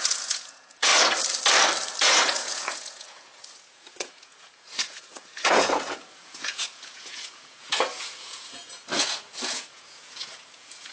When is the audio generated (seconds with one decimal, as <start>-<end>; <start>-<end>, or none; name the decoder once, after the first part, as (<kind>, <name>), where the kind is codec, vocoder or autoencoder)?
0.0-0.9 (vocoder, Vocos); 2.0-10.9